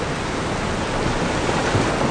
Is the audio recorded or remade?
recorded